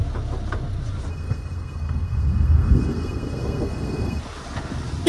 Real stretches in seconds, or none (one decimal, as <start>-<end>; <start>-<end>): 0.0-1.1; 4.2-5.1